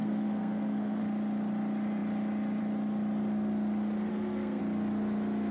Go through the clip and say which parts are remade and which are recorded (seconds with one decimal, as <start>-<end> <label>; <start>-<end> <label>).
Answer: 0.0-1.0 remade; 1.0-4.1 recorded; 4.1-4.6 remade; 4.6-5.5 recorded